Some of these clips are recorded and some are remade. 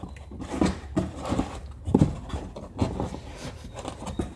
recorded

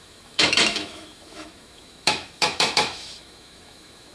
remade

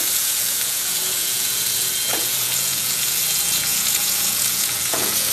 remade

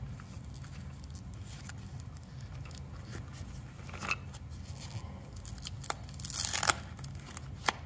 recorded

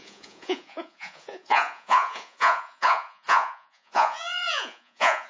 remade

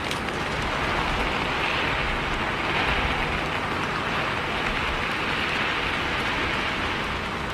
recorded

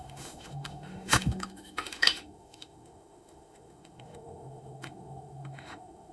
remade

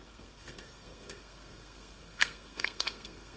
remade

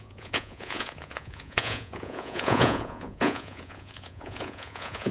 remade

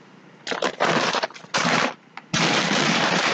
remade